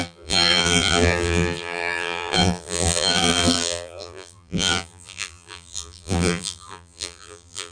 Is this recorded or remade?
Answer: remade